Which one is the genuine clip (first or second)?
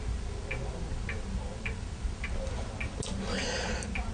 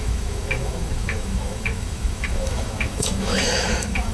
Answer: first